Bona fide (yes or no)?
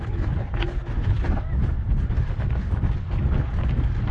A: yes